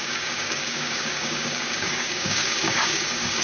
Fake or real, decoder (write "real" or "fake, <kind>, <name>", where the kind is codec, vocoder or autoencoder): fake, codec, DAC